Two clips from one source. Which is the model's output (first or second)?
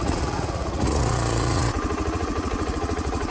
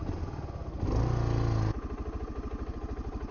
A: first